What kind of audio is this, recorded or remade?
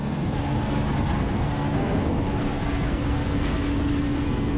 remade